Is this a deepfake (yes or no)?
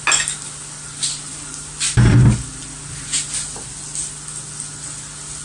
no